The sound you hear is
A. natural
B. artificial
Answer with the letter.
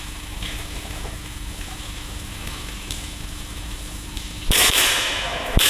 B